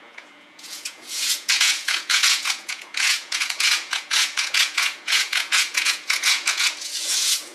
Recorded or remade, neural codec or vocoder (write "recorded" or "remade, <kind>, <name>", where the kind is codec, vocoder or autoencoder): remade, vocoder, Vocos